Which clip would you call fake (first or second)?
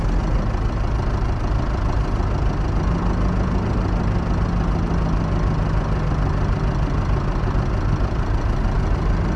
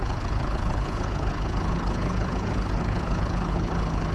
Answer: second